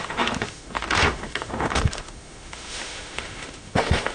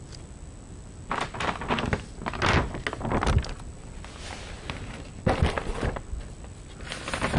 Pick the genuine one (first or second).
second